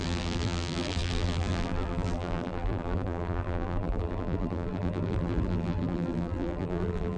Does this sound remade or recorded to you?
remade